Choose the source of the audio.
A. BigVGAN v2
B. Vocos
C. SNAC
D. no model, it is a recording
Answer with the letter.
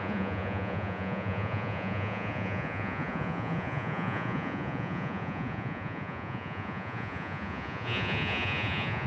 B